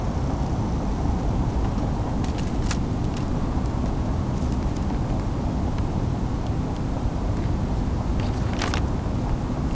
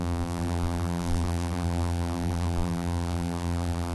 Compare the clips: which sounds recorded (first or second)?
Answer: first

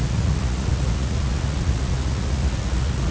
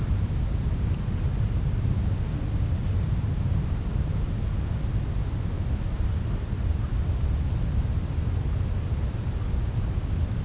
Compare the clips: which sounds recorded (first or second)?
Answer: second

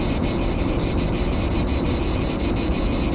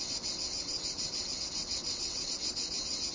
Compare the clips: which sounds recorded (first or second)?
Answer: first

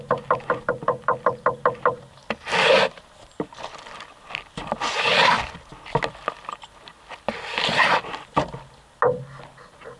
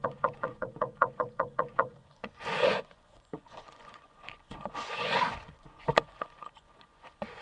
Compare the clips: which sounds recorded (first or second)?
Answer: first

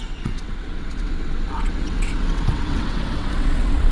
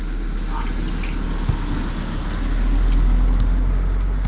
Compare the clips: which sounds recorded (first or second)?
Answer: second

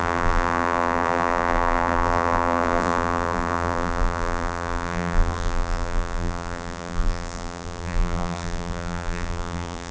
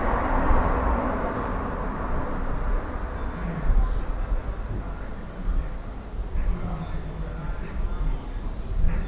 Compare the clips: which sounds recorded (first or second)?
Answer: second